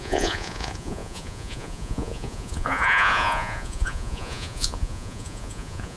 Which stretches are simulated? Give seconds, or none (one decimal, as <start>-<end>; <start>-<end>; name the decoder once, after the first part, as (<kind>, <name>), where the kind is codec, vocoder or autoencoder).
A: 0.0-6.0 (vocoder, Vocos)

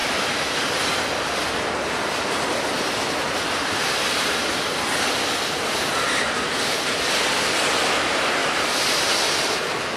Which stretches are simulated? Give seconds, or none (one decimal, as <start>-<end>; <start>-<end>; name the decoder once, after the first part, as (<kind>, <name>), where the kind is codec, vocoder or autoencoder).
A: 0.0-4.7 (vocoder, BigVGAN v2); 8.4-9.6

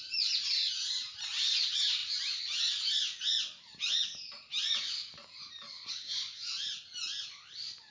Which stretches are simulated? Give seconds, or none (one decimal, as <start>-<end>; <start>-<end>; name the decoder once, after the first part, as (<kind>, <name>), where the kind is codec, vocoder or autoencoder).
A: none

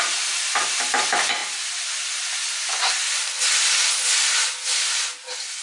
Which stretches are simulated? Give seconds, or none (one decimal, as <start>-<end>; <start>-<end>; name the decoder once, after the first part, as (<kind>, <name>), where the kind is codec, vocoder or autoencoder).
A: none

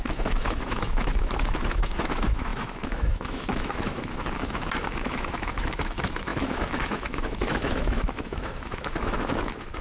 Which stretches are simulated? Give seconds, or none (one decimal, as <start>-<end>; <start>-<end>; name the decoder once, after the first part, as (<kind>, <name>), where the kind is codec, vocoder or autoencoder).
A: 0.0-9.8 (autoencoder, DAC-VAE)

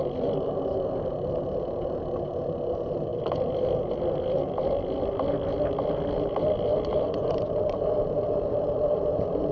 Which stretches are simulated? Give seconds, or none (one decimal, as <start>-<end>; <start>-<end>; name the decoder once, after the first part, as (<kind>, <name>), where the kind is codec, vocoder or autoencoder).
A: 6.9-9.5 (vocoder, BigVGAN v2)

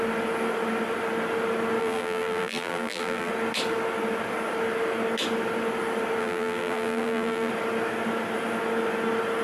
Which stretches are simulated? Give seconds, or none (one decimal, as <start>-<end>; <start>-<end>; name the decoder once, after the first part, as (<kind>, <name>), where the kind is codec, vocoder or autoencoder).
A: 1.8-3.3 (vocoder, BigVGAN v2); 6.2-7.5

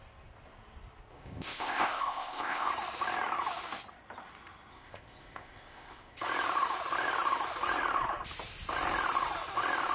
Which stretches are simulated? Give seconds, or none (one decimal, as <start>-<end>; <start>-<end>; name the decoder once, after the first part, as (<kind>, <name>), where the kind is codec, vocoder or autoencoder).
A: 1.1-2.7 (codec, ZipCodec); 4.7-6.2